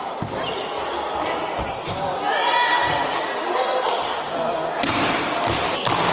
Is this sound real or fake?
real